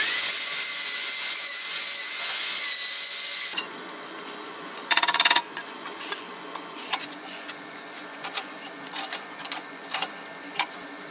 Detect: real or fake fake